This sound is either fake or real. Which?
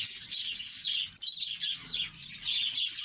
real